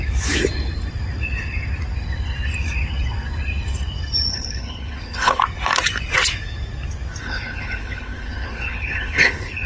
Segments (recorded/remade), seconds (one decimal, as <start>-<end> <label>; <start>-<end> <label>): 0.0-4.3 recorded; 4.3-5.4 remade; 5.4-7.2 recorded; 7.2-9.7 remade